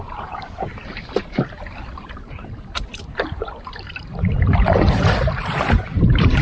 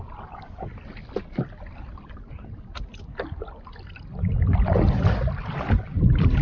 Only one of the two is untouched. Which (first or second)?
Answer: second